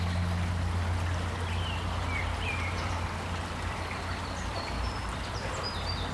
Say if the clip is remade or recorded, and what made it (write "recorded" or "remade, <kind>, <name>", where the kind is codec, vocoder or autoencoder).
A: recorded